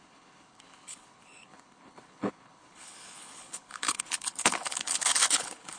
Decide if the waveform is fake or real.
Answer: fake